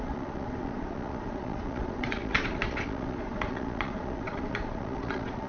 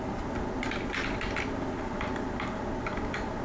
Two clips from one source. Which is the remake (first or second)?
first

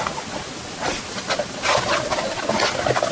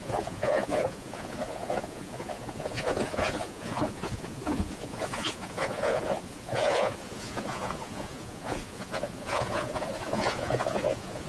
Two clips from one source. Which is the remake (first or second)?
second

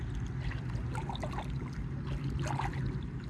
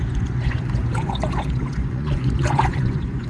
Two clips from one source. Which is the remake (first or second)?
second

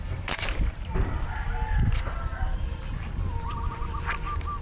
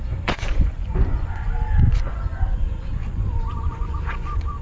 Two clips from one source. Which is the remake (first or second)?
second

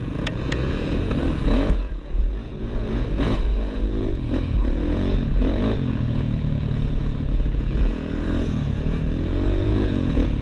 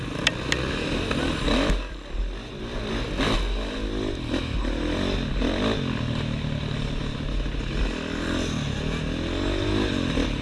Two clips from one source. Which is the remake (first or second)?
first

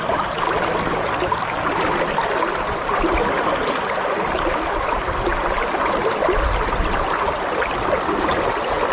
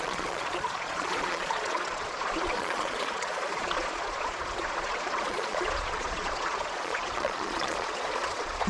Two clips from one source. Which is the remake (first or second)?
second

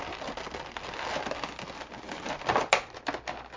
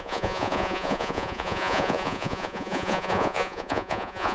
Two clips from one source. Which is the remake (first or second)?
second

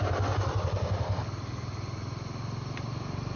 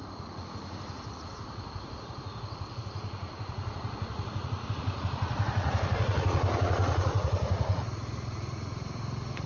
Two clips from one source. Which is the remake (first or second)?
second